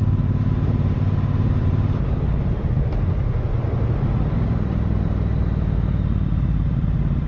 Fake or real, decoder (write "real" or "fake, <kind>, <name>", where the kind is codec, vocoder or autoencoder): fake, vocoder, BigVGAN v2